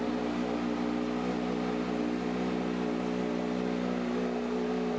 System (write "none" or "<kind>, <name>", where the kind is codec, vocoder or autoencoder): none